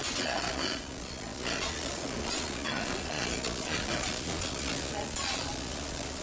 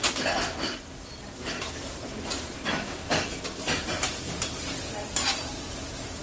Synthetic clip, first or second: first